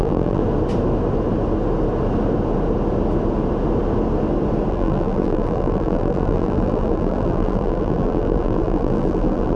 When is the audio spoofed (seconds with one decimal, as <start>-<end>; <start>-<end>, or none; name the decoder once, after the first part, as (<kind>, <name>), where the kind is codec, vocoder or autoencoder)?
0.0-0.4 (vocoder, BigVGAN v2); 4.7-9.6